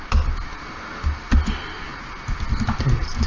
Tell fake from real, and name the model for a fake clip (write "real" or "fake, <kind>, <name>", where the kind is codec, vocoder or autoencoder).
real